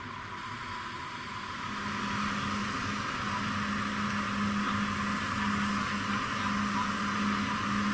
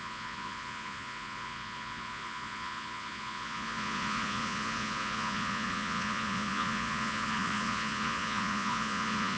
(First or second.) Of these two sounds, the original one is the first